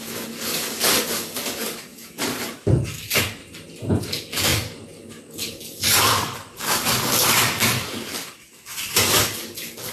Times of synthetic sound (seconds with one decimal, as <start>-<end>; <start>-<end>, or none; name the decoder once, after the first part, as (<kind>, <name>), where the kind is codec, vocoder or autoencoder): 0.0-3.4 (codec, DAC); 4.0-9.9